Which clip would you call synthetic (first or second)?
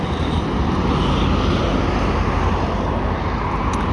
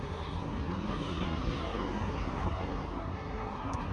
second